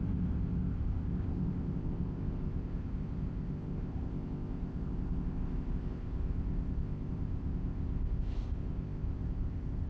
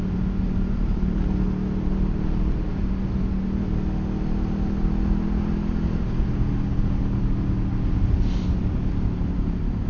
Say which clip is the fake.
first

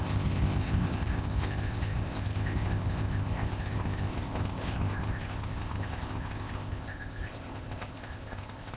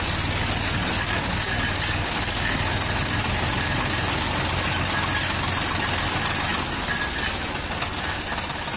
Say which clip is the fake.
first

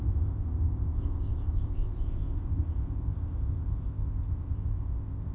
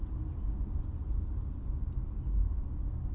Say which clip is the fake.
first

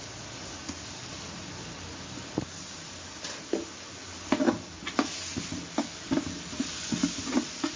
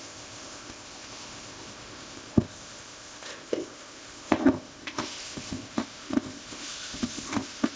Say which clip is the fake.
second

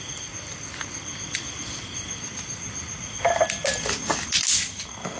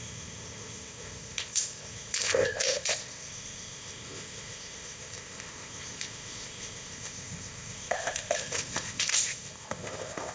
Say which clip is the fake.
second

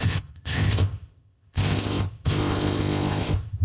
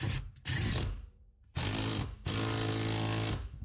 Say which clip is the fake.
first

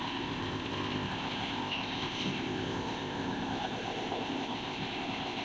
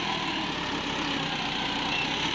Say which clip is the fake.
first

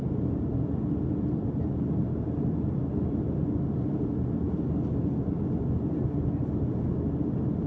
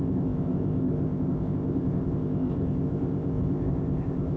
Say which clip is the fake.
second